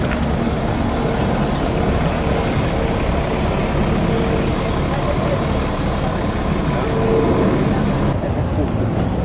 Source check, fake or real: real